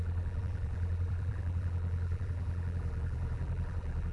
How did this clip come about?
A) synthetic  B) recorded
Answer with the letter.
A